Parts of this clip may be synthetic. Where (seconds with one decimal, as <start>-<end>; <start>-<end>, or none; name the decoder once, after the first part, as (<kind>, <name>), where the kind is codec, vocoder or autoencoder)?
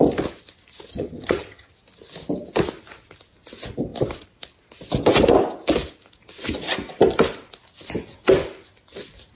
0.9-1.7 (vocoder, HiFi-GAN)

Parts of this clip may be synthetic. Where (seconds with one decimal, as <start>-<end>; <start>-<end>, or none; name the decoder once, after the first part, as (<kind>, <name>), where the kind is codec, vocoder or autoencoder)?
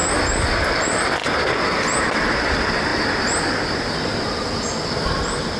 0.7-1.2 (vocoder, BigVGAN v2); 2.3-5.6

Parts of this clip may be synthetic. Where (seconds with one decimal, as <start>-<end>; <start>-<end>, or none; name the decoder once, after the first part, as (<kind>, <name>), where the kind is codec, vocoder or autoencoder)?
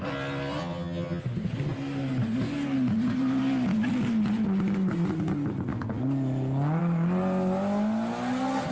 0.6-1.2 (vocoder, HiFi-GAN)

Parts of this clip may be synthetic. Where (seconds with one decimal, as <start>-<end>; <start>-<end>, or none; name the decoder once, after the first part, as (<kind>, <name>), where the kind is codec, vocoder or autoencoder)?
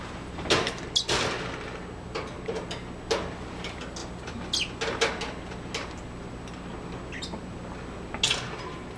none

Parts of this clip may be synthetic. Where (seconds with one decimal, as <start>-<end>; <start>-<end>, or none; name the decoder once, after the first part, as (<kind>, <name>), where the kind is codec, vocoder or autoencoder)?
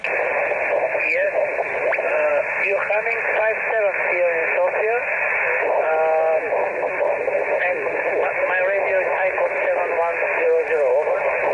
none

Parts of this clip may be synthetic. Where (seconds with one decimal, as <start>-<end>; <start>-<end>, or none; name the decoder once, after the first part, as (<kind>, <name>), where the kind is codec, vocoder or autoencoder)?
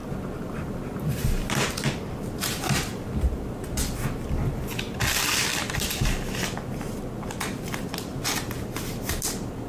0.0-4.6 (vocoder, BigVGAN v2); 5.5-6.2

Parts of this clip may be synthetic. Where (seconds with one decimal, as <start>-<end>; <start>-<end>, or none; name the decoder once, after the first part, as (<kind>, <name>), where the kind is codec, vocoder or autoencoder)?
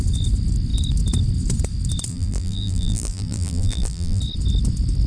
2.1-4.2 (vocoder, BigVGAN v2)